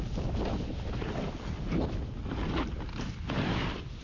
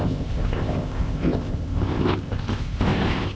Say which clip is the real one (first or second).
first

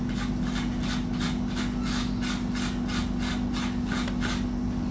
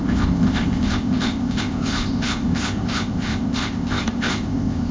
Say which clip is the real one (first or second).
first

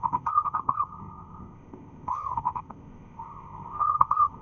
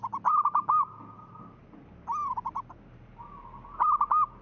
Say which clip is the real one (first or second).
second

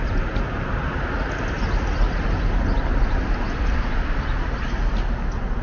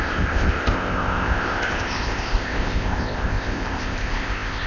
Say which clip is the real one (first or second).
first